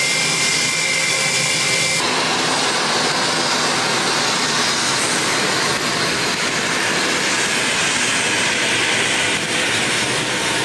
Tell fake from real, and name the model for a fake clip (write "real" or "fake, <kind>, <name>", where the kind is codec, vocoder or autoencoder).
real